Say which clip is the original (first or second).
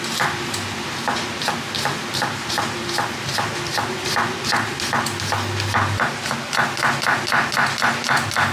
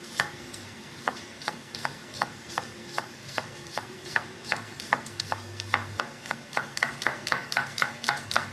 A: first